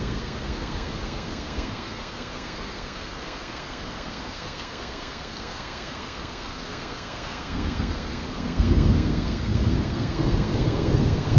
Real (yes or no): no